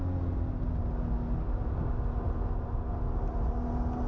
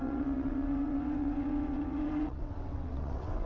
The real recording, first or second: first